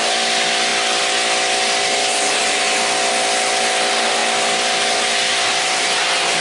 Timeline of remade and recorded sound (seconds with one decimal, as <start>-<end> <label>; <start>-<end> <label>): 0.0-6.4 recorded